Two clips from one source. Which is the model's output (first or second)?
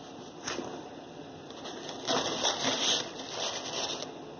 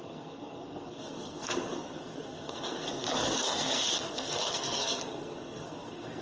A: second